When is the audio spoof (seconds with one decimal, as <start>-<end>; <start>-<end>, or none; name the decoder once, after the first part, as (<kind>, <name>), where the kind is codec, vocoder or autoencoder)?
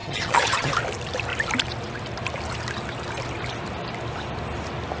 0.0-0.7 (vocoder, HiFi-GAN)